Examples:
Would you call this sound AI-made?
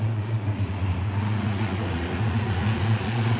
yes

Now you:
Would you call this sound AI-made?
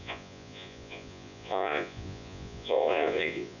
yes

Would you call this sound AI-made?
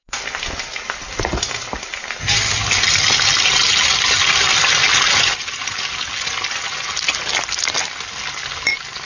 no